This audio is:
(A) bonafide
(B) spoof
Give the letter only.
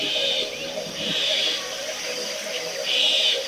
B